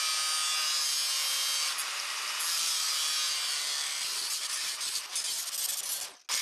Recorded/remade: recorded